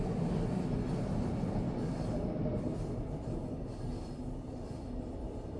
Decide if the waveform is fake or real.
real